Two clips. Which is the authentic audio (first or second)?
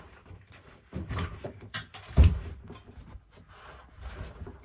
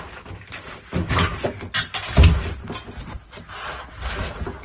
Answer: second